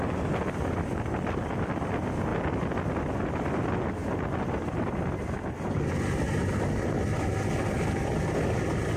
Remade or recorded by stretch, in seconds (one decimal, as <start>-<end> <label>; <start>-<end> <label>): 0.0-9.0 recorded